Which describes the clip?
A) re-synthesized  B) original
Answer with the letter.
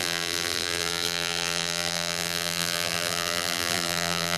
A